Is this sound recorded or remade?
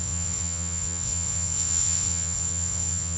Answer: remade